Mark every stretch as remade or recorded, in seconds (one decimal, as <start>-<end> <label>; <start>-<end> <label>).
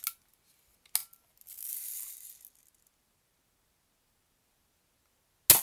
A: 0.0-5.6 recorded